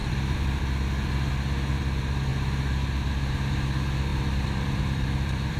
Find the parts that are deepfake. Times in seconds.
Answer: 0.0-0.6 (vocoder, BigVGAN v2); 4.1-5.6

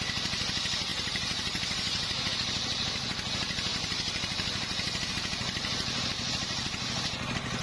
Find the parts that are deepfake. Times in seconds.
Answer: 0.9-2.3 (vocoder, BigVGAN v2)

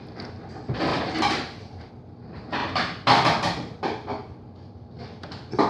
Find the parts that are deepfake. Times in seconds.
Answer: 0.9-1.9 (vocoder, BigVGAN v2); 2.6-3.8

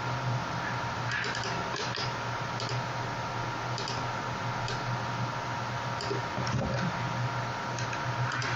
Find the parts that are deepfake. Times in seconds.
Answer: 0.4-2.7 (vocoder, BigVGAN v2)